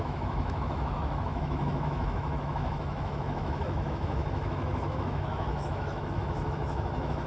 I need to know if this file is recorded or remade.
remade